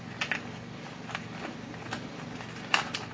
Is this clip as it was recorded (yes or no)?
yes